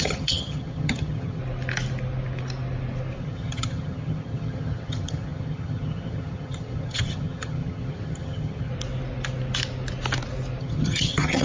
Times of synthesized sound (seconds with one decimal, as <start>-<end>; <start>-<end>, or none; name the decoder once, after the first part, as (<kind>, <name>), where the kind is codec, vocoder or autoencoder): 0.0-1.4 (vocoder, HiFi-GAN); 3.2-8.7; 10.6-11.4